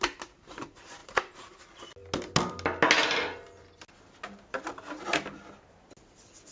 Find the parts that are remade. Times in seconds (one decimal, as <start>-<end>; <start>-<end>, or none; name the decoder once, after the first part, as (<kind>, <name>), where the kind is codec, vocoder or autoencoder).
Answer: 1.0-1.6 (vocoder, BigVGAN v2)